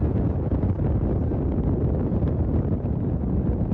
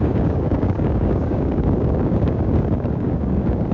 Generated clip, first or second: second